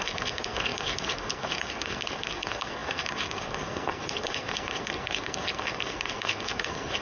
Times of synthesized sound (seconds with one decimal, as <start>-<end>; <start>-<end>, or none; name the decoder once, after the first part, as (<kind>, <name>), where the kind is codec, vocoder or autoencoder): 0.0-7.0 (codec, SNAC)

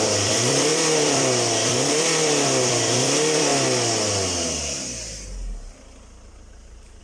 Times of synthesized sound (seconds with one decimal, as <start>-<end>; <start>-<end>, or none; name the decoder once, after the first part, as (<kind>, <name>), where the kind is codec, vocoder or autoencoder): 0.0-3.5 (vocoder, BigVGAN v2)